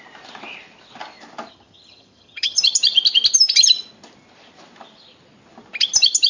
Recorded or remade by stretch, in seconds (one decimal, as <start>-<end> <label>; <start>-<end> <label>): 0.0-1.5 recorded; 1.5-2.6 remade; 2.6-6.3 recorded